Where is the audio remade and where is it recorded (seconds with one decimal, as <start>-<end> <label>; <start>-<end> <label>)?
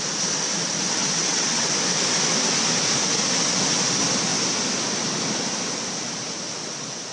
0.0-1.0 recorded; 1.0-1.7 remade; 1.7-7.1 recorded